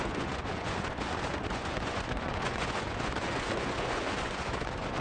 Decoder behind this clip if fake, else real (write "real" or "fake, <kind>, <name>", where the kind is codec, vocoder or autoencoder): fake, vocoder, Vocos